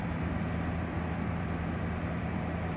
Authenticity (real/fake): fake